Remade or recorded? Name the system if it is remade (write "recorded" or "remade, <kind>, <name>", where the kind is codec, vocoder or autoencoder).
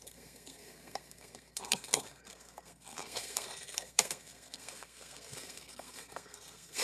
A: remade, codec, SNAC